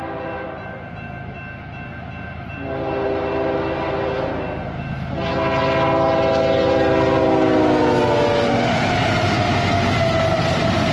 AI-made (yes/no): no